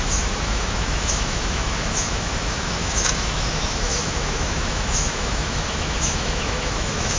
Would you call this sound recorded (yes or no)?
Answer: no